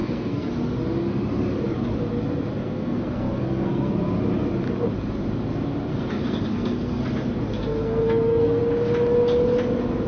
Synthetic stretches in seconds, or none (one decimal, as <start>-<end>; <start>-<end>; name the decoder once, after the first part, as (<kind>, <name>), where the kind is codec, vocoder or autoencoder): 0.0-0.5 (codec, SNAC); 2.6-3.9; 5.9-7.0; 7.5-8.6